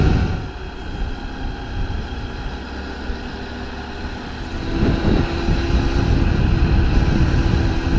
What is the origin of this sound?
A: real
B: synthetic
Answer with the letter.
A